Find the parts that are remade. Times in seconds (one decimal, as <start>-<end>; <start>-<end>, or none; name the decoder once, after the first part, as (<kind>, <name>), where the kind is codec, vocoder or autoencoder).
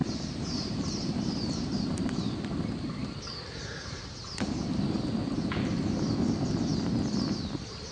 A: 0.0-2.3 (vocoder, BigVGAN v2); 3.0-4.2